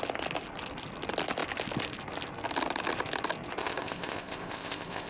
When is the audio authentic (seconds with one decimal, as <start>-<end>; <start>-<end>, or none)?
0.0-3.6